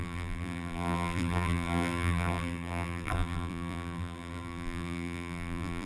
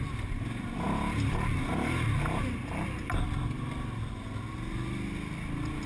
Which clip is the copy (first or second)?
first